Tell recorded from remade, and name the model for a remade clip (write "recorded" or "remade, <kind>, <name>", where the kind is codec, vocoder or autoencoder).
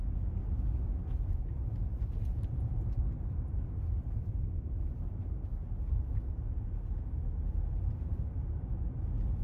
recorded